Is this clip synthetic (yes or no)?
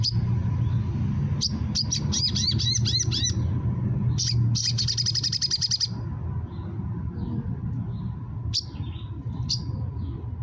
no